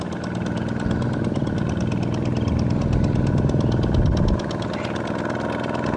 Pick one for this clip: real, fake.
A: real